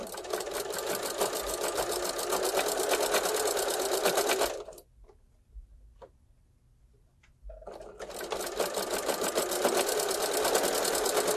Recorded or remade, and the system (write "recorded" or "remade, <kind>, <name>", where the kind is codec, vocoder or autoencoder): recorded